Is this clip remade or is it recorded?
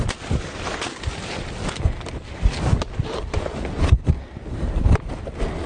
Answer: remade